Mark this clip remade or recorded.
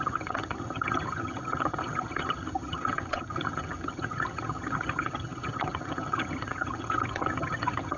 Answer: remade